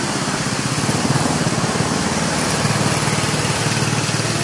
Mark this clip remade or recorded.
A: recorded